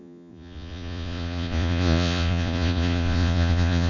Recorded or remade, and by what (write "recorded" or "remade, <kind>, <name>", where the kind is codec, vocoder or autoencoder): remade, vocoder, Vocos